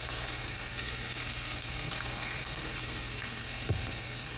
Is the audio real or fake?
fake